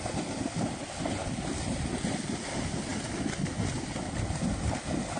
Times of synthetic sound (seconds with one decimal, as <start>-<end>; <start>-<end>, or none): none